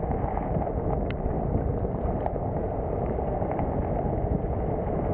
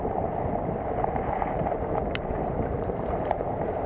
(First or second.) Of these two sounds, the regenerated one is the second